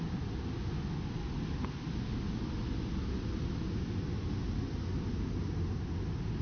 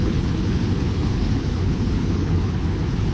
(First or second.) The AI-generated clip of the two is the second